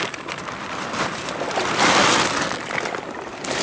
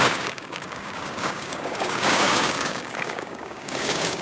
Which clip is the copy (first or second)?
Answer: second